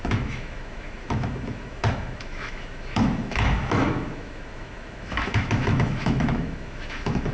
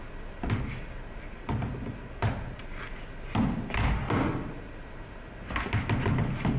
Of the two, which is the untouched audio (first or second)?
second